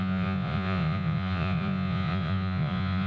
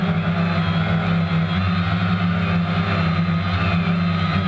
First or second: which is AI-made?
first